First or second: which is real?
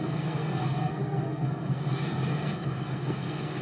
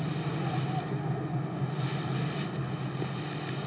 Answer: second